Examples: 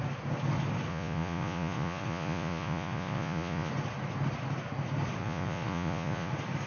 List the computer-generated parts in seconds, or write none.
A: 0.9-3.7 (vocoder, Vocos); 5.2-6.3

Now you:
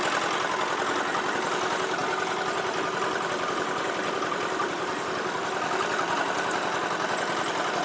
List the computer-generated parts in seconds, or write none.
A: none

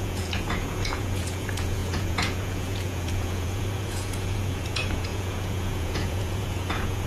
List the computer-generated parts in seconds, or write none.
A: 0.0-7.1 (vocoder, Vocos)

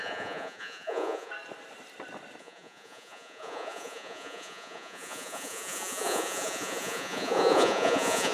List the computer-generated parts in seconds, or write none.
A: 0.0-1.3 (vocoder, Vocos); 2.4-8.3